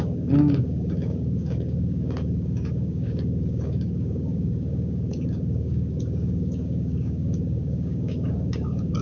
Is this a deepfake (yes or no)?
yes